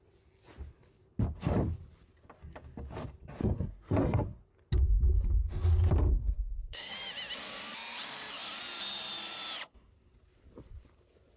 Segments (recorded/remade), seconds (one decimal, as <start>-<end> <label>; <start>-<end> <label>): 0.0-3.4 recorded; 3.4-4.4 remade; 4.4-6.1 recorded; 6.1-6.9 remade; 6.9-11.4 recorded